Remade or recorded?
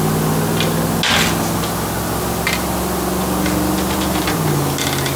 recorded